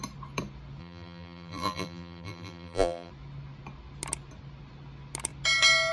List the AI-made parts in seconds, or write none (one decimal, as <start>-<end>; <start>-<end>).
0.8-3.1